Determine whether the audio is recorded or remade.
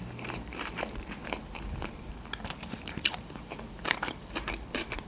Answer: remade